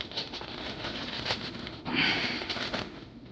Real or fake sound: fake